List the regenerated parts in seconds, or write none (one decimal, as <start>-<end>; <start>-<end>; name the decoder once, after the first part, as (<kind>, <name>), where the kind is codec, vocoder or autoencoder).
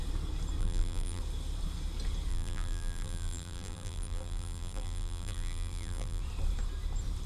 0.6-1.2 (vocoder, BigVGAN v2); 2.3-6.2